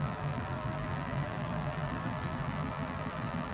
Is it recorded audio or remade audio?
remade